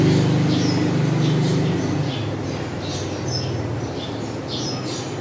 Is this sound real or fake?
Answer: real